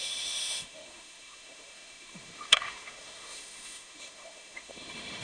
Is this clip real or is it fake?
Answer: fake